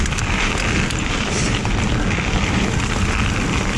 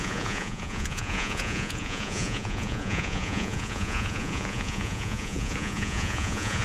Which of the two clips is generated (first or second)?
second